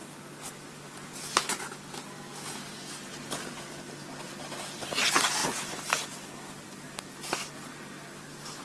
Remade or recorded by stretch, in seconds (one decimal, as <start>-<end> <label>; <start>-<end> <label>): 0.0-1.8 remade; 1.8-5.4 recorded; 5.4-8.6 remade